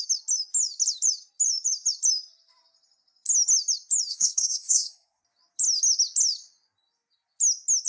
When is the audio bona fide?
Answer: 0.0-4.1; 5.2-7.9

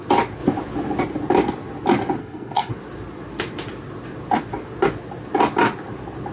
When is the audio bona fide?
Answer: 0.0-2.2; 2.7-6.3

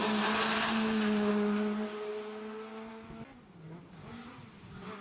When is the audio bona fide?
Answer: 0.0-5.0